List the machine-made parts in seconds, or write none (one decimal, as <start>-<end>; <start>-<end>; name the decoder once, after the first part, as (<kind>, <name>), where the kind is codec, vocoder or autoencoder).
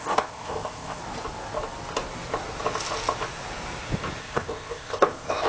0.0-1.0 (codec, ZipCodec); 4.2-5.5